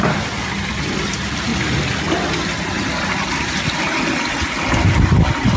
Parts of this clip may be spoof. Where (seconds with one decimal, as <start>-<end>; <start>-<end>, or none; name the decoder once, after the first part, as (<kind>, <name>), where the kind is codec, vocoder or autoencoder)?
none